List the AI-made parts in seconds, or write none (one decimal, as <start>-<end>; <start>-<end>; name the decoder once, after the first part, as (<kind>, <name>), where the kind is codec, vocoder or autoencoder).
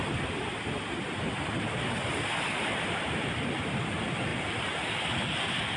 none